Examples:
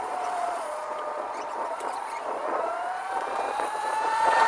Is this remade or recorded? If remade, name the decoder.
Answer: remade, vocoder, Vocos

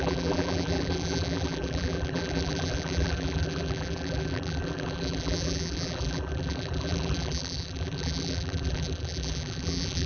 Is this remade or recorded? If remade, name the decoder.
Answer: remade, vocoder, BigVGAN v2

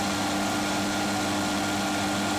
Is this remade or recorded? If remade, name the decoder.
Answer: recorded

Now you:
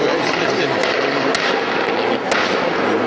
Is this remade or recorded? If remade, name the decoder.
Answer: recorded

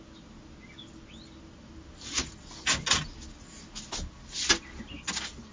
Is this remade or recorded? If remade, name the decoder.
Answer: recorded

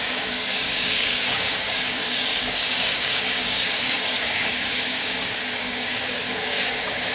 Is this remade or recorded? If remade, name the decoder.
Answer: remade, codec, DAC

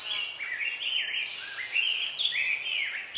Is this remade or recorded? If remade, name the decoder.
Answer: recorded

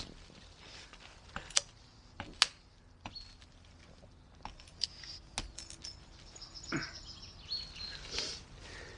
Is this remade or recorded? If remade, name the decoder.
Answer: recorded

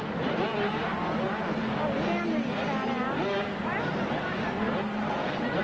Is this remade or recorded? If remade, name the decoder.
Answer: recorded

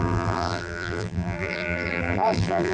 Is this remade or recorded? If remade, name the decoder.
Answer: remade, vocoder, BigVGAN v2